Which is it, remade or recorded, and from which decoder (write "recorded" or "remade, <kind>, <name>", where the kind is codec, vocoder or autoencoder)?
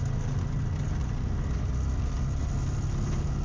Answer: recorded